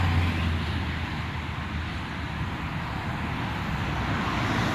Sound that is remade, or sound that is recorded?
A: recorded